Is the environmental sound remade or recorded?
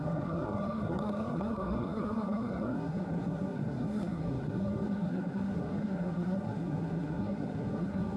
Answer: remade